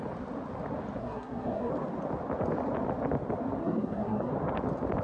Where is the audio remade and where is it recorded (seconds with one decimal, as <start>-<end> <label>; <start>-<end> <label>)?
0.0-1.0 recorded; 1.0-1.7 remade; 1.7-3.6 recorded; 3.6-4.3 remade; 4.3-5.0 recorded